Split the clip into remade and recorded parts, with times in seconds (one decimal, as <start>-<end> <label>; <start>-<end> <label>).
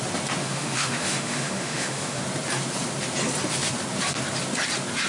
0.0-0.4 recorded; 0.4-2.2 remade; 2.2-5.1 recorded